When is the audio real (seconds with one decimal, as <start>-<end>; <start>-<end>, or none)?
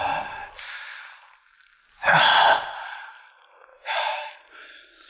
0.0-3.7; 4.4-5.1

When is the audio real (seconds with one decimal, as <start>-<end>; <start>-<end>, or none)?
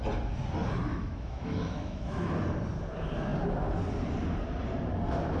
0.0-0.9; 2.3-5.4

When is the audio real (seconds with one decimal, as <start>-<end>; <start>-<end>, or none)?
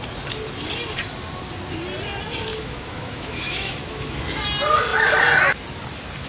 0.0-2.5; 4.2-6.3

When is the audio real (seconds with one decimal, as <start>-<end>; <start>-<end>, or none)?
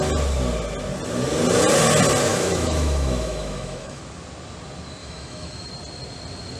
0.0-2.3; 4.0-5.0; 5.7-6.6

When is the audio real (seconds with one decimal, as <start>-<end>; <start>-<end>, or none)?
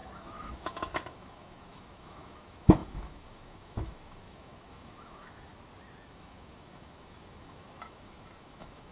5.5-6.1